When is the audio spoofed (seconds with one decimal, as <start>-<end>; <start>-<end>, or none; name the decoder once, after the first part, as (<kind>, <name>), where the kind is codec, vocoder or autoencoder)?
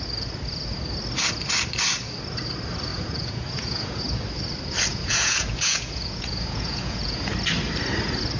2.9-4.0 (vocoder, Vocos); 4.9-7.3